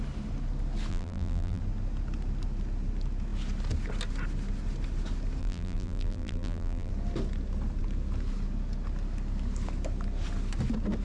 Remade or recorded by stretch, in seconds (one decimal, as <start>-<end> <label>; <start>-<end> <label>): 0.0-0.9 recorded; 0.9-1.6 remade; 1.6-5.4 recorded; 5.4-6.9 remade; 6.9-11.0 recorded